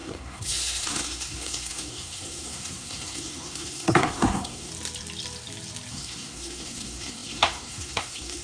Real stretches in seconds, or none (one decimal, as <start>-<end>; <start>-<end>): 4.7-5.9